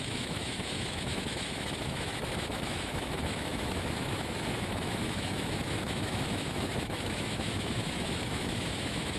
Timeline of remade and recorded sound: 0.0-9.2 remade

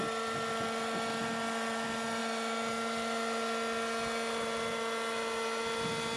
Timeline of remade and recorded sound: 0.0-6.2 recorded

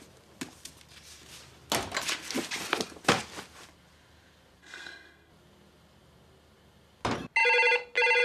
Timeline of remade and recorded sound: 0.0-4.6 recorded; 4.6-5.3 remade; 5.3-8.2 recorded

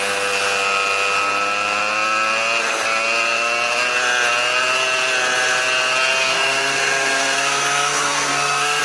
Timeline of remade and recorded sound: 0.0-6.2 recorded; 6.2-8.8 remade

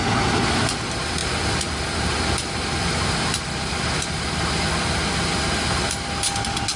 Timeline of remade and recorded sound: 0.0-6.8 recorded

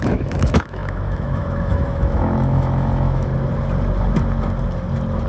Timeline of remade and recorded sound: 0.0-3.3 remade; 3.3-5.3 recorded

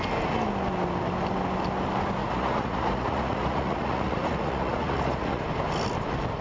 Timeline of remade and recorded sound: 0.0-2.2 recorded; 2.2-5.4 remade; 5.4-6.4 recorded

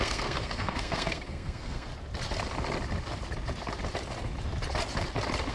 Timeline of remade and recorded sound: 0.0-1.9 remade; 1.9-5.5 recorded